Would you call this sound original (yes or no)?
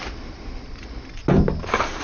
yes